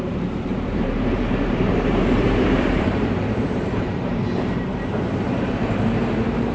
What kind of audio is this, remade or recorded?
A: remade